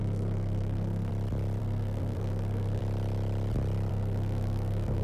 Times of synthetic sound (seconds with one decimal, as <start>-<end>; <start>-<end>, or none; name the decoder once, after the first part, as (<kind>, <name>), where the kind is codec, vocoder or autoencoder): 0.0-1.1 (codec, SNAC); 1.6-2.8; 3.9-5.0